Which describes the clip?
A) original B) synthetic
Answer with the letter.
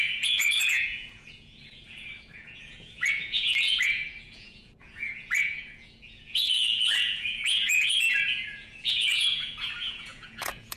B